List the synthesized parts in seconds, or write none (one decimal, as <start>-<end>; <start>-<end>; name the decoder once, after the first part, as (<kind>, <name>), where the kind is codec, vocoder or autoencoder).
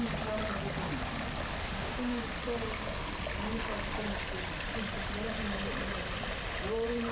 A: 1.6-2.2 (autoencoder, DAC-VAE)